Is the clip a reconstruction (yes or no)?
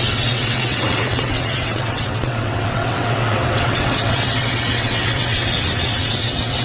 yes